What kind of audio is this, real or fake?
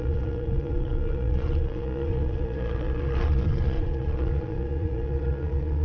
fake